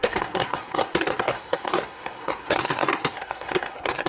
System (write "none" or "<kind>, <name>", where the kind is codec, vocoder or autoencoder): codec, SNAC